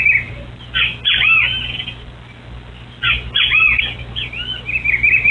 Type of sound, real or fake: real